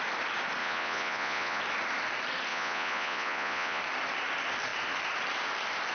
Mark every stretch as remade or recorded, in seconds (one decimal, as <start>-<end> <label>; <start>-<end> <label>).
0.0-0.6 recorded; 0.6-1.6 remade; 1.6-2.5 recorded; 2.5-3.8 remade; 3.8-5.9 recorded